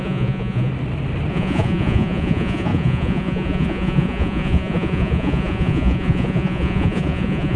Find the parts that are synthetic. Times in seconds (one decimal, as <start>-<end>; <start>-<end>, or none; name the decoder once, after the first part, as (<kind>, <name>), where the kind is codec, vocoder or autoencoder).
0.0-0.7 (vocoder, Vocos); 1.3-7.6